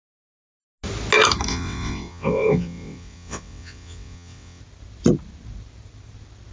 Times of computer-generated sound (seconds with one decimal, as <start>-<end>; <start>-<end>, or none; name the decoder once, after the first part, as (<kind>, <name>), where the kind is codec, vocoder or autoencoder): 1.5-4.6 (vocoder, WaveNeXt)